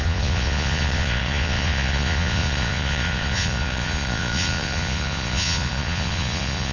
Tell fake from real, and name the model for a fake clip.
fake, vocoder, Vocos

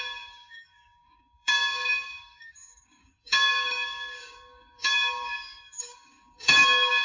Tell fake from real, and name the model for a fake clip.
fake, codec, DAC